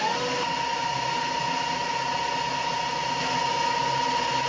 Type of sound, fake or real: real